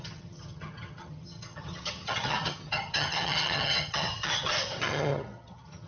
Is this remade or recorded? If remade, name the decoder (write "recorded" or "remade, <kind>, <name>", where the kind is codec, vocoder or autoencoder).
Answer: remade, vocoder, HiFi-GAN